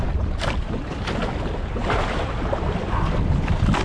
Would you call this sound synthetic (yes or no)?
no